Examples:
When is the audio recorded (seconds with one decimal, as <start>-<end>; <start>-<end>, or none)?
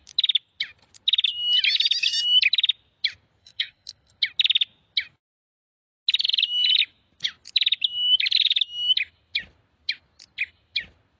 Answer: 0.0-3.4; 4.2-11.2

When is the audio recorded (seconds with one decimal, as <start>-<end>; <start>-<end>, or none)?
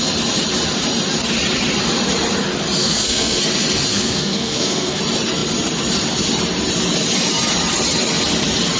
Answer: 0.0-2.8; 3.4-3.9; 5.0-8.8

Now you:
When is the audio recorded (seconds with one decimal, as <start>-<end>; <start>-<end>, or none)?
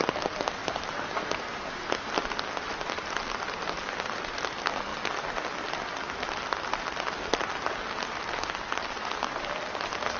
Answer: 0.0-10.2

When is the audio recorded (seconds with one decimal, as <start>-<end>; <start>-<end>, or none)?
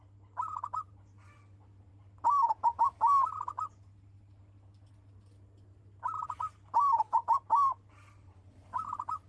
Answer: 1.9-4.9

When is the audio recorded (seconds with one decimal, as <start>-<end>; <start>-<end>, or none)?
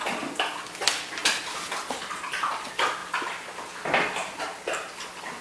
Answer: 0.0-5.4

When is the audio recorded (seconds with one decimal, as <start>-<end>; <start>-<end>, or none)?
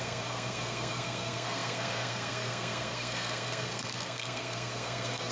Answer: none